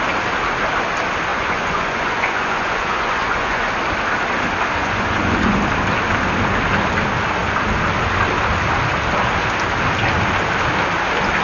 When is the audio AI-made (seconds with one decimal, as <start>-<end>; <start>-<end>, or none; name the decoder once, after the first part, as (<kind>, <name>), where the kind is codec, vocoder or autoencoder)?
1.3-3.7 (vocoder, Vocos); 4.8-5.6

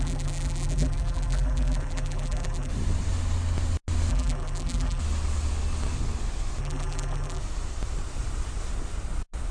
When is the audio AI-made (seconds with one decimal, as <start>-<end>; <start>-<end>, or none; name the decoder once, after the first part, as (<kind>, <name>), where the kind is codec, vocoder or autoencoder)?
0.0-2.7 (vocoder, BigVGAN v2); 4.1-5.0; 6.6-7.4

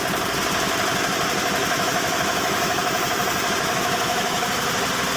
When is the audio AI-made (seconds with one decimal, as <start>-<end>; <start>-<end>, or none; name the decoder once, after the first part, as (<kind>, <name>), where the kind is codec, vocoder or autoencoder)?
1.6-4.7 (autoencoder, DAC-VAE)

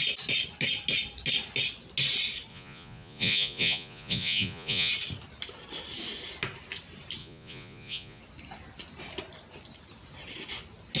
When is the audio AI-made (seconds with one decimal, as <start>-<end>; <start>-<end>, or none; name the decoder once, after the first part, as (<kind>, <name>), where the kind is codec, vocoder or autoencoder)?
2.5-4.9 (vocoder, Vocos); 7.2-8.2

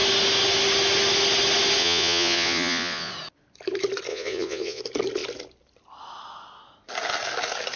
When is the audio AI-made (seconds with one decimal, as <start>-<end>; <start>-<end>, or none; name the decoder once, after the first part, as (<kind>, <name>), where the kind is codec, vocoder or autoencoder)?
1.8-3.1 (vocoder, Vocos); 4.1-4.8

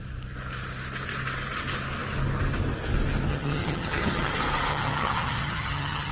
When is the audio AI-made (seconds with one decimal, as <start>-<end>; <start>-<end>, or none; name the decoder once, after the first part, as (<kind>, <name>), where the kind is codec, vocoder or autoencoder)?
3.3-4.3 (vocoder, HiFi-GAN); 4.7-6.1